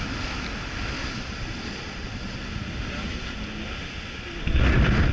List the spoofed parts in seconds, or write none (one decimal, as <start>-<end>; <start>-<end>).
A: 1.0-2.5